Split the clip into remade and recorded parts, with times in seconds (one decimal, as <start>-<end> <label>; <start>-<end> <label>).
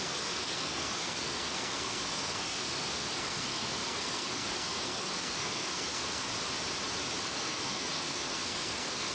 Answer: 0.0-6.3 remade; 6.3-7.2 recorded; 7.2-9.1 remade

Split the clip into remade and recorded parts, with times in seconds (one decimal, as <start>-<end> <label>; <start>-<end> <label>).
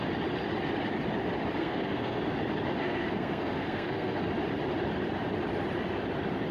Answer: 0.0-1.6 recorded; 1.6-2.2 remade; 2.2-2.8 recorded; 2.8-4.2 remade; 4.2-6.5 recorded